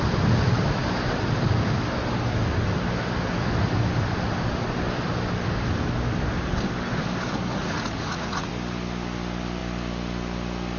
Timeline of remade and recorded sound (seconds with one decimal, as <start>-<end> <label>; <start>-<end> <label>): 0.0-7.6 recorded; 7.6-8.5 remade; 8.5-10.8 recorded

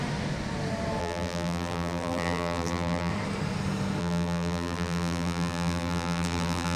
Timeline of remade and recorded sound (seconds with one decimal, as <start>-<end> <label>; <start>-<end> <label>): 0.0-1.0 recorded; 1.0-3.1 remade; 3.1-4.0 recorded; 4.0-6.8 remade

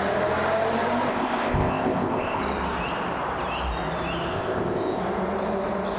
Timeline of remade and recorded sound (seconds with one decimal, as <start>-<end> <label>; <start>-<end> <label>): 0.0-1.1 recorded; 1.1-2.4 remade; 2.4-4.3 recorded; 4.3-5.0 remade; 5.0-6.0 recorded

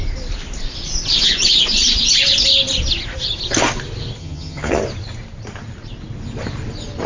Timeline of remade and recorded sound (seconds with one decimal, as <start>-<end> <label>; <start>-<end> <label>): 0.0-4.2 recorded; 4.2-4.8 remade; 4.8-7.1 recorded

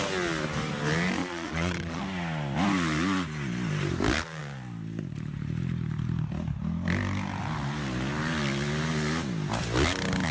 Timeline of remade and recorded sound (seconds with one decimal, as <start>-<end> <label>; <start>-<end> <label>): 0.0-1.2 recorded; 1.2-2.0 remade; 2.0-10.3 recorded

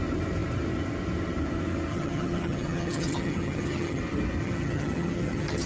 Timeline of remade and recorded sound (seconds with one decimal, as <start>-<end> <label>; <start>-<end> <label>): 0.0-1.9 recorded; 1.9-4.0 remade; 4.0-4.4 recorded; 4.4-5.7 remade

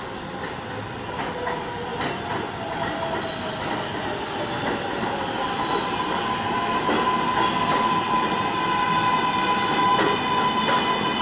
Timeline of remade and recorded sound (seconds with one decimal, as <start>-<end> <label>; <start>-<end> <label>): 0.0-11.2 recorded